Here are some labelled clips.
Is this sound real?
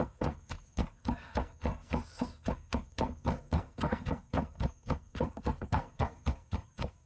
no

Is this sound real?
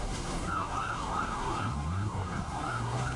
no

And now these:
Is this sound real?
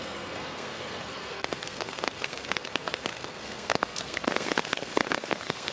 no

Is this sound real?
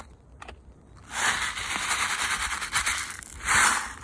yes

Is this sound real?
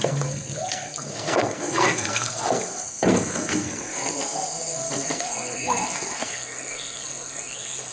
no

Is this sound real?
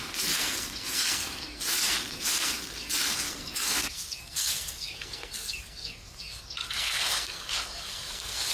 no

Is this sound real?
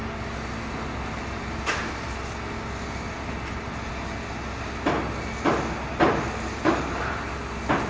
yes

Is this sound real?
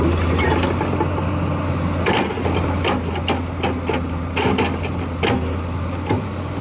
yes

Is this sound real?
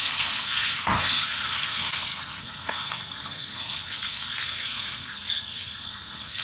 no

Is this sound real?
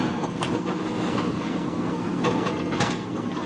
no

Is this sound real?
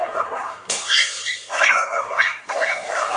no